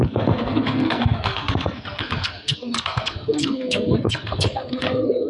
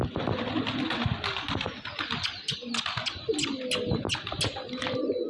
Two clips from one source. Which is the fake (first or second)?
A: first